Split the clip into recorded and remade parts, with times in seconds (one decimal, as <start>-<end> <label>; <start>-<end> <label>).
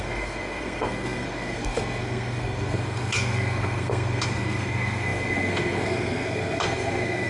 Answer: 0.0-7.3 remade